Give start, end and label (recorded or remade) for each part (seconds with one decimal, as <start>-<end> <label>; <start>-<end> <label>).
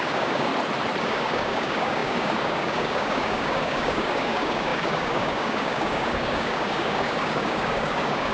0.0-0.5 remade; 0.5-1.0 recorded; 1.0-8.3 remade